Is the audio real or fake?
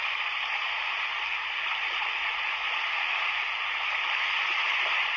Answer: real